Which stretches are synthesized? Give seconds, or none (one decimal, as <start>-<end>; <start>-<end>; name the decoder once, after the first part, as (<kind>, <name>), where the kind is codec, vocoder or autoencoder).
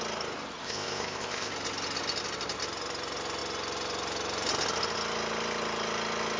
0.6-1.5 (codec, ZipCodec)